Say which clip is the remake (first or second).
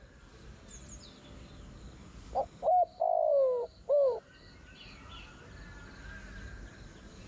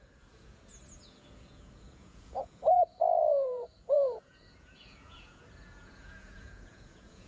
second